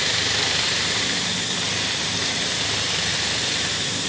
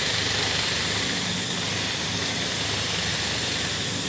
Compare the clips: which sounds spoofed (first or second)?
first